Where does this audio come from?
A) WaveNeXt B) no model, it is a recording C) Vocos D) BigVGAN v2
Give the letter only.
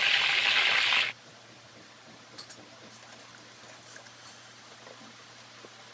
B